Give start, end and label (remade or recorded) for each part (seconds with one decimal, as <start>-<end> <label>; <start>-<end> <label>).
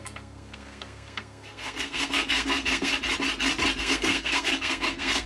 0.0-2.9 remade; 2.9-3.8 recorded; 3.8-5.3 remade